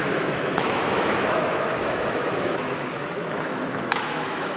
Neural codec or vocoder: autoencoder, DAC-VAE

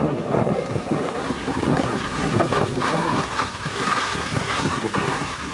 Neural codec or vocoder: codec, SNAC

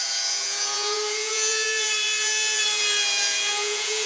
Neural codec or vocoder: vocoder, Vocos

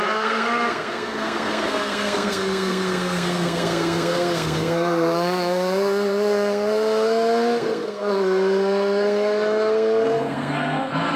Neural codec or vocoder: codec, SNAC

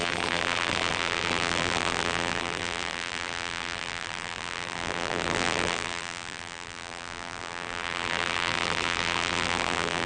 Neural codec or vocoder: vocoder, BigVGAN v2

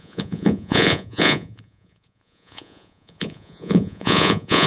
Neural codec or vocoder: vocoder, Vocos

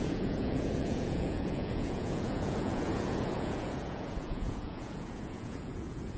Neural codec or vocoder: vocoder, Vocos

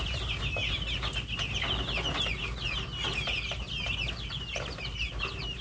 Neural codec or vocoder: none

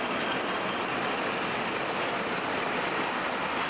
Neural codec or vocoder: none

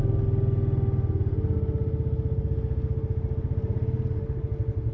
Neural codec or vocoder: none